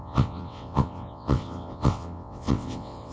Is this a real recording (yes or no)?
no